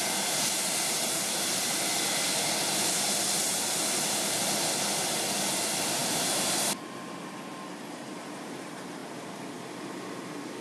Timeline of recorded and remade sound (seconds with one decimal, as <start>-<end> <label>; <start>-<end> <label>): 0.0-1.9 remade; 1.9-5.2 recorded; 5.2-6.0 remade; 6.0-7.9 recorded; 7.9-9.0 remade; 9.0-9.9 recorded; 9.9-10.6 remade